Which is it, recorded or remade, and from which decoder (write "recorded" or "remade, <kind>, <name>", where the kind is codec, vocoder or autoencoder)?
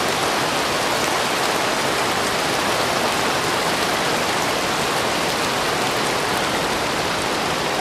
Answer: recorded